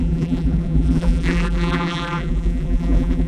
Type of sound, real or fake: fake